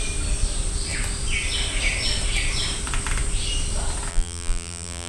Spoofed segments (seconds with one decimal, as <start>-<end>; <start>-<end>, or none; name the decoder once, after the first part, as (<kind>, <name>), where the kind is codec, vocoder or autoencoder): 4.1-5.1 (vocoder, BigVGAN v2)